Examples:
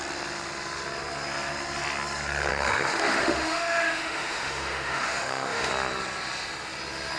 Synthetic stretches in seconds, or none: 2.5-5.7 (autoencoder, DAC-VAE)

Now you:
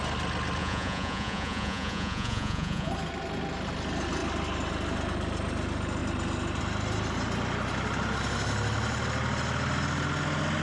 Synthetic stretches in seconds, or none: 0.6-2.9 (vocoder, Vocos)

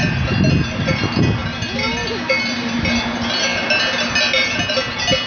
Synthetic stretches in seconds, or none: none

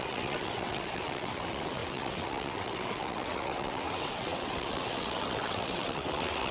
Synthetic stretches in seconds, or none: 0.0-6.5 (vocoder, WaveNeXt)

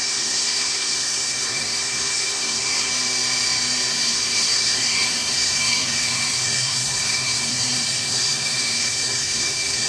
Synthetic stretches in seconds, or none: 0.0-2.9 (codec, SNAC); 3.9-9.9